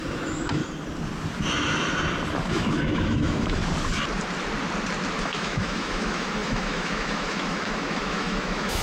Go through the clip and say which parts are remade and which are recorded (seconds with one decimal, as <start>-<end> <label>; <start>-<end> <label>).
0.0-0.6 remade; 0.6-2.5 recorded; 2.5-3.6 remade; 3.6-5.2 recorded; 5.2-8.8 remade